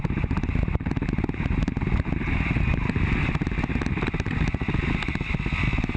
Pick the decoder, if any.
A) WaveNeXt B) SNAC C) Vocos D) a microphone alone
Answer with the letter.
D